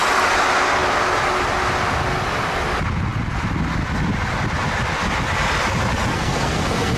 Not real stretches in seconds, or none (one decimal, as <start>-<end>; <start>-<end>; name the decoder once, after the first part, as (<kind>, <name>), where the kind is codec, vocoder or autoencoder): 6.1-7.0 (codec, SNAC)